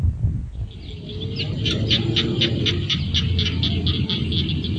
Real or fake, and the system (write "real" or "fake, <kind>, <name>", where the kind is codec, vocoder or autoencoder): real